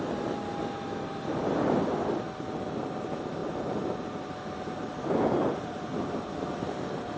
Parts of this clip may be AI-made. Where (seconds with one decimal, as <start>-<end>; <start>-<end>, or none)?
none